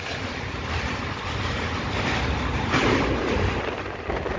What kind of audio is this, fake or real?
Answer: real